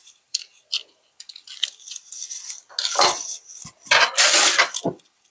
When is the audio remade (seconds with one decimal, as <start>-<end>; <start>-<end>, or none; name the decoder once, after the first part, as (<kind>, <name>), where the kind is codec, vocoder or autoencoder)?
0.0-0.6 (vocoder, BigVGAN v2)